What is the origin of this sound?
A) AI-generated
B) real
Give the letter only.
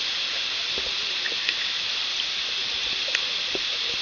B